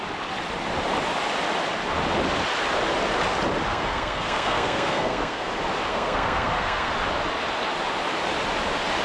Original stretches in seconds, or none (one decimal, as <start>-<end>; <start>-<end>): 0.0-3.7; 5.5-5.9; 6.9-9.0